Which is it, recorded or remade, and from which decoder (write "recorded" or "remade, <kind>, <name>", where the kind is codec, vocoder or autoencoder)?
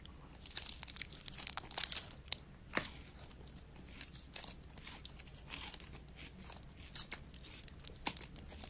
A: recorded